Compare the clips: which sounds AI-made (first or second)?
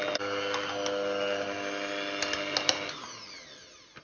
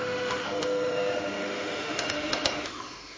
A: second